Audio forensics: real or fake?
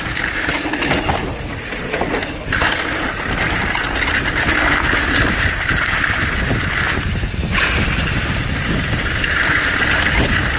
real